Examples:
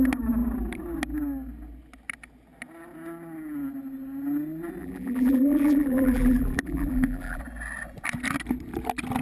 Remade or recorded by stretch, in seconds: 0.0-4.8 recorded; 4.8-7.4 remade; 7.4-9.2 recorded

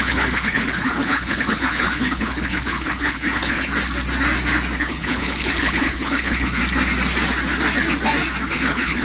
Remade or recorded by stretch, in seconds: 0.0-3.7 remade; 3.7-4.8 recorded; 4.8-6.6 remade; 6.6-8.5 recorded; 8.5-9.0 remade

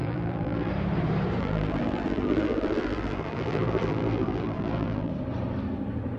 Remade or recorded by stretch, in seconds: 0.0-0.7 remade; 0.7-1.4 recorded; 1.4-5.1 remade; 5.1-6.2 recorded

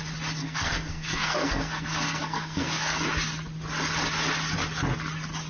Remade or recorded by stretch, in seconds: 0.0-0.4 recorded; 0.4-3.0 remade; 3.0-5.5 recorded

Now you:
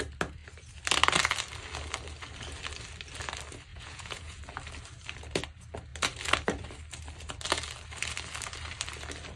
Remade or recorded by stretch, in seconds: 0.0-3.7 recorded; 3.7-4.4 remade; 4.4-9.4 recorded

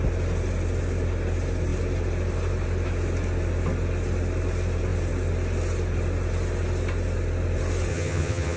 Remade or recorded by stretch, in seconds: 0.0-7.9 recorded; 7.9-8.6 remade